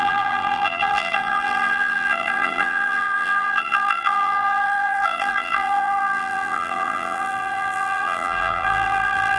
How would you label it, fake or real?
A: fake